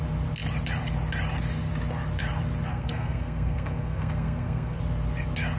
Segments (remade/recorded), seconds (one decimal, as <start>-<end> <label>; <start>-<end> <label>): 0.0-2.7 recorded; 2.7-4.8 remade; 4.8-5.6 recorded